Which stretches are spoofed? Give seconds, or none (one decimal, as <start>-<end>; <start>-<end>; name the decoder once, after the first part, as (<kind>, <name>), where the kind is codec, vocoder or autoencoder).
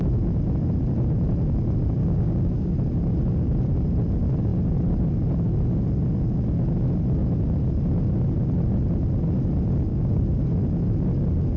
2.0-2.7 (codec, DAC); 9.9-10.4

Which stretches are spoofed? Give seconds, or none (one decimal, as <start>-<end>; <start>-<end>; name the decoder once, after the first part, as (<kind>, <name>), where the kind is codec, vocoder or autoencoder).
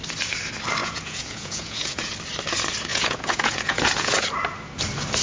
0.8-2.1 (vocoder, Vocos); 2.9-4.2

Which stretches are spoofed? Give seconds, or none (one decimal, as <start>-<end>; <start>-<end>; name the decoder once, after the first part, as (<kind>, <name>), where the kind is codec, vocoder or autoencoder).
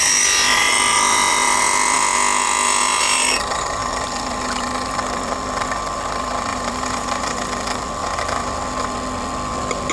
6.5-7.4 (vocoder, BigVGAN v2)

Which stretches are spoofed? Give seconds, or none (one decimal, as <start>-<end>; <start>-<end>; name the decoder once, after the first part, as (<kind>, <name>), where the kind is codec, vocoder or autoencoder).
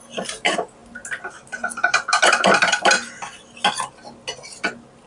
none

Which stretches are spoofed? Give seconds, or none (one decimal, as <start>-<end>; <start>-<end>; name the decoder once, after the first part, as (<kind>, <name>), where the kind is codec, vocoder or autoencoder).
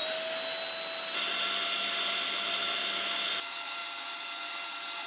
none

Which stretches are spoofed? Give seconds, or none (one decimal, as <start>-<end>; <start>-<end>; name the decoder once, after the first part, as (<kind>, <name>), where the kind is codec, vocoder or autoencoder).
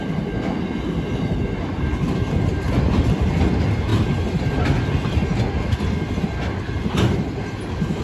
none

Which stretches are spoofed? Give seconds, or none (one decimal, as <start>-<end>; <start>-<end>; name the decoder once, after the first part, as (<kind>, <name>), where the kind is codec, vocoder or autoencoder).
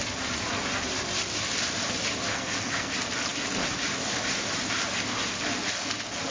2.3-2.9 (codec, SNAC)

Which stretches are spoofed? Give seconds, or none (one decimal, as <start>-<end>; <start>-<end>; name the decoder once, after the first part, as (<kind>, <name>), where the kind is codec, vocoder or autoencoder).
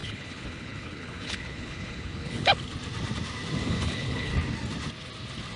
0.0-2.5 (codec, HILCodec); 3.7-4.3